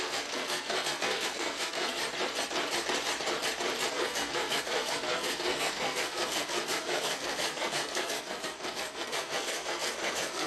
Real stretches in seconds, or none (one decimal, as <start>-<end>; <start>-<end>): 2.0-3.9